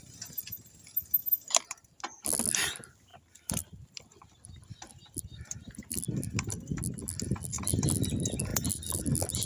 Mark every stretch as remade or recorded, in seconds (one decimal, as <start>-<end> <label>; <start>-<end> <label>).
0.0-3.1 recorded; 3.1-6.0 remade; 6.0-8.5 recorded; 8.5-9.0 remade; 9.0-9.5 recorded